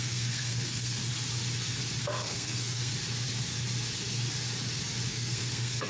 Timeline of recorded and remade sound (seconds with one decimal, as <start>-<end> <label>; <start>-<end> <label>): 0.0-1.0 remade; 1.0-2.0 recorded; 2.0-2.9 remade; 2.9-5.1 recorded; 5.1-5.9 remade